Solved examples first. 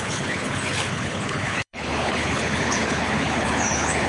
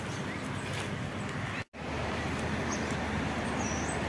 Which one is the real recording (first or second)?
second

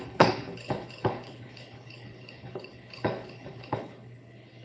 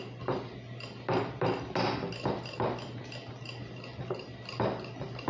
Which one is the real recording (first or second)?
second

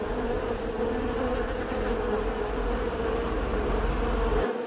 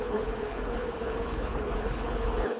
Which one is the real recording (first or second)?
first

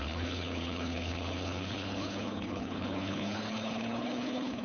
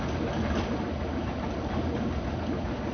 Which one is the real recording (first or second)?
second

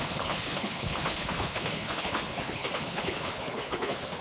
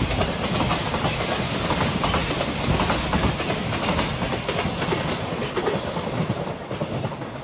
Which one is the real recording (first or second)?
second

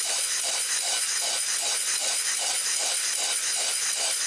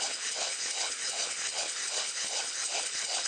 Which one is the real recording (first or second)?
first